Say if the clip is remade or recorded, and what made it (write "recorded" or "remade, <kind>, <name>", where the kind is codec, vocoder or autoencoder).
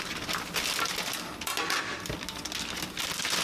recorded